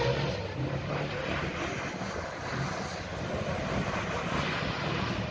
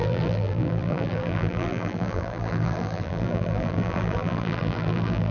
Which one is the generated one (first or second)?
second